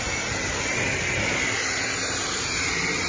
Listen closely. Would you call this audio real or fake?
real